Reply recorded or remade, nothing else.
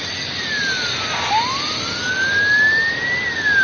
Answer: recorded